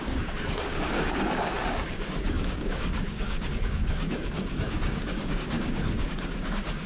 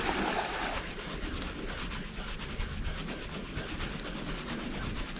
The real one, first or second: second